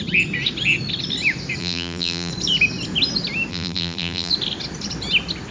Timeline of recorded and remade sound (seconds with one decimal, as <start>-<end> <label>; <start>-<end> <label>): 0.0-1.6 recorded; 1.6-2.3 remade; 2.3-3.5 recorded; 3.5-4.3 remade; 4.3-5.5 recorded